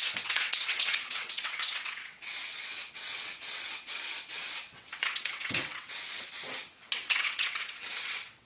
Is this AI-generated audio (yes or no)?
yes